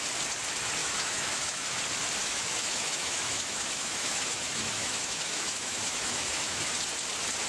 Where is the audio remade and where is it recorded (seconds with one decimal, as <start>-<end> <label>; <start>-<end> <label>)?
0.0-0.8 recorded; 0.8-1.8 remade; 1.8-2.2 recorded; 2.2-6.7 remade; 6.7-7.5 recorded

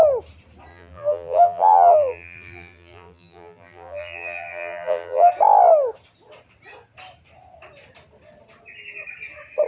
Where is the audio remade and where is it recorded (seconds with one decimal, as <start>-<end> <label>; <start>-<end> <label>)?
0.0-0.7 recorded; 0.7-5.3 remade; 5.3-9.7 recorded

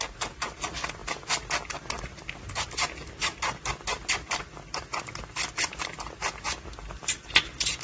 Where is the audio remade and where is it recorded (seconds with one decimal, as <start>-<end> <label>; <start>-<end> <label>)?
0.0-7.8 recorded

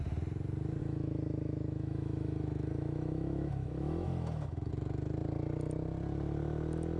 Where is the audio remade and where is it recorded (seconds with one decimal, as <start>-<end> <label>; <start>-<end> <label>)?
0.0-0.8 recorded; 0.8-4.7 remade; 4.7-7.0 recorded

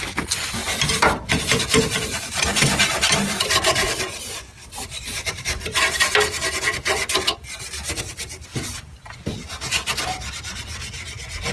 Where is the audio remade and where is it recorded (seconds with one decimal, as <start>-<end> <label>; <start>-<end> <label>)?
0.0-0.6 recorded; 0.6-3.4 remade; 3.4-4.6 recorded; 4.6-6.1 remade; 6.1-11.5 recorded